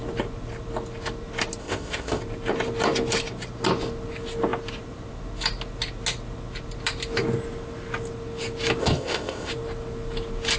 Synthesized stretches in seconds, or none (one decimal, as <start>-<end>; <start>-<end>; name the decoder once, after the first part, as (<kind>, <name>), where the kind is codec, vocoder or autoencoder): 1.6-2.2 (codec, ZipCodec); 8.8-9.5